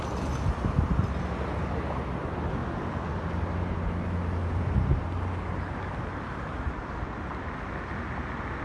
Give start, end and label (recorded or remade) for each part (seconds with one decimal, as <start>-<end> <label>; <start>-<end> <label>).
0.0-8.6 recorded